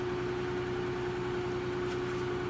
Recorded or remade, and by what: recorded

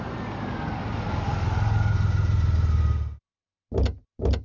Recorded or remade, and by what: recorded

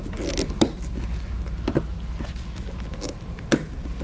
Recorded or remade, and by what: recorded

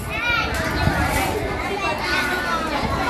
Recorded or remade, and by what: recorded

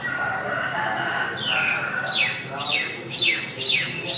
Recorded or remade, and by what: recorded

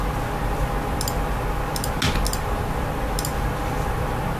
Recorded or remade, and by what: recorded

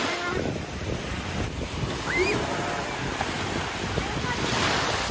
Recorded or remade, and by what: recorded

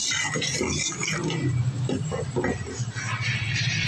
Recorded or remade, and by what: recorded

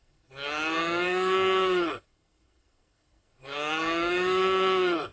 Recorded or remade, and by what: remade, codec, SNAC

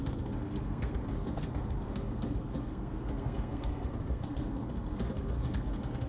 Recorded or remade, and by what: remade, codec, SNAC